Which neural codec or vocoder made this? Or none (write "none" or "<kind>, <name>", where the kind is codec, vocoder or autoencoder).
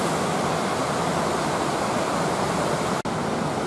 none